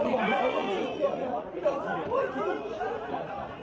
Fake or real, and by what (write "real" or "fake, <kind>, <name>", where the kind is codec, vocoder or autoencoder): fake, vocoder, Vocos